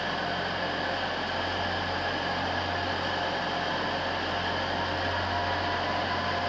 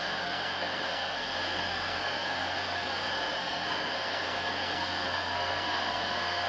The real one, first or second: first